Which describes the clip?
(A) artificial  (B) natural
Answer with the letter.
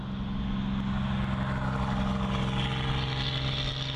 B